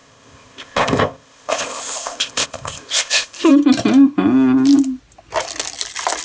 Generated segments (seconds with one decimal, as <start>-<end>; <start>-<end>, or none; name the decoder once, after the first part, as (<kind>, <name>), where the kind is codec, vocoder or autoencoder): 0.0-3.5 (codec, ZipCodec)

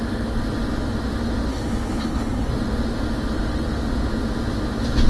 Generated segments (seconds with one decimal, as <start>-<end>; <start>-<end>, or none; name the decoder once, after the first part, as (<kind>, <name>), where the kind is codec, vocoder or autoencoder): 1.5-2.5 (codec, HILCodec)